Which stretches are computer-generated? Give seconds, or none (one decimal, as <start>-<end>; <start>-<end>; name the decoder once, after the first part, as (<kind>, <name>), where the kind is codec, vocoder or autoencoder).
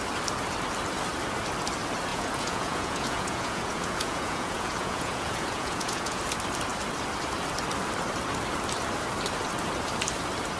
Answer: 2.1-6.2 (vocoder, Vocos)